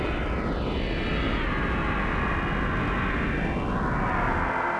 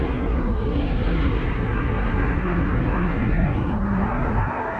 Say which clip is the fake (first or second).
second